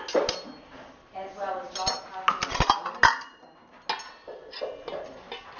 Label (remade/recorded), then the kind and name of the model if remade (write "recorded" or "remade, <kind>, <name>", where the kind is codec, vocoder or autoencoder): recorded